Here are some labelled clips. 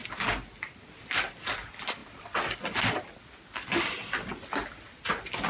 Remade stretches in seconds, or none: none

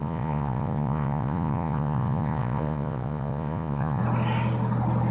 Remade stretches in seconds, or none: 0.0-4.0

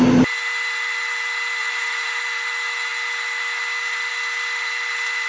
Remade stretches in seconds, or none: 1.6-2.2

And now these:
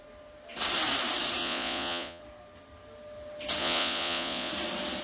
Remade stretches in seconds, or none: 1.4-2.2; 3.6-4.5

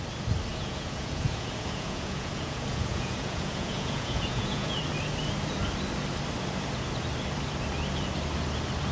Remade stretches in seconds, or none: 0.5-4.8

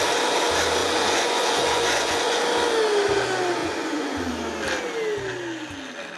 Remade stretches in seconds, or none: 0.8-2.4; 3.6-4.3

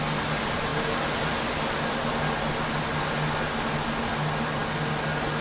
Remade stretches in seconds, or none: none